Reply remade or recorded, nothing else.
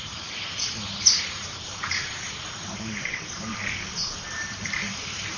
remade